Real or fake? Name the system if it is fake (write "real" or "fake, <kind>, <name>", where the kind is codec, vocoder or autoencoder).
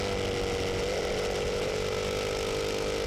real